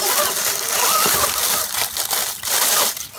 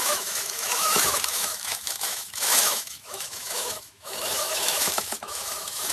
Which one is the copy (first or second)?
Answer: second